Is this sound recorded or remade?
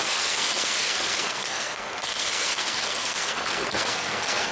remade